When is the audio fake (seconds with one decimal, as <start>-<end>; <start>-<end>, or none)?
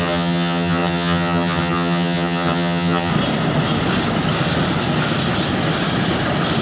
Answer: 0.0-3.1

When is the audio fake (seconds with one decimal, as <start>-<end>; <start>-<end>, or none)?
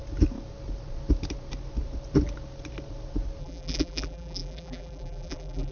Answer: 3.4-5.7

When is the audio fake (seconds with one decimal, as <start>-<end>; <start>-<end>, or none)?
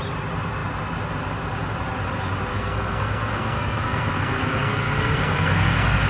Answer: 2.5-6.1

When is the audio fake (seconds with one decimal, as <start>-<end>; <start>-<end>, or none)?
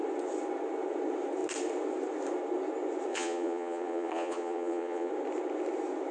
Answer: 3.1-5.1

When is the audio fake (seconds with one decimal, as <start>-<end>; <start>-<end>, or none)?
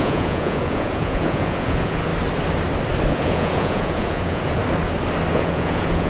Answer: 0.0-2.1; 3.1-4.6; 5.3-6.1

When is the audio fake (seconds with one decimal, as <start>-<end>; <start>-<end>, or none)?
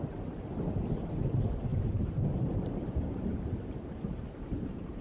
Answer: 1.7-5.0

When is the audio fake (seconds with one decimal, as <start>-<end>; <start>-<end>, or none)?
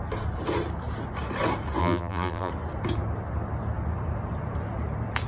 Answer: 1.8-2.5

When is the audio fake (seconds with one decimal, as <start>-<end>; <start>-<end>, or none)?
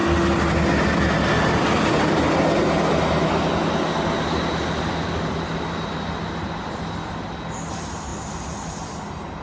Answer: none